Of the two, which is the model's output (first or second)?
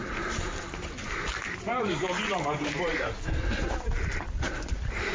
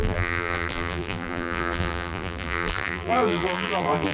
second